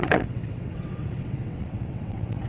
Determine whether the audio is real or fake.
fake